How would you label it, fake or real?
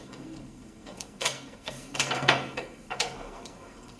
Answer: fake